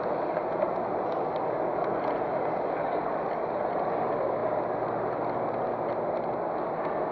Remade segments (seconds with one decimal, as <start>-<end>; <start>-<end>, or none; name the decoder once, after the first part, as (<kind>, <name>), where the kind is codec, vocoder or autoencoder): none